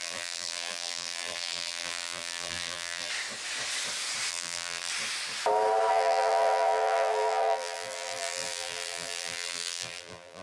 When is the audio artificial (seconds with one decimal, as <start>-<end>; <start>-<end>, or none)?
0.0-3.1; 4.3-4.9; 5.9-10.4